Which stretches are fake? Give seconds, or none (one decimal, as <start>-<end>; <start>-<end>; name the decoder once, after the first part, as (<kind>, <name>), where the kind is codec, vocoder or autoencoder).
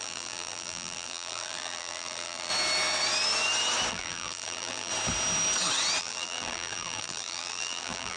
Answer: 0.0-2.5 (vocoder, BigVGAN v2); 3.9-4.9; 6.0-8.2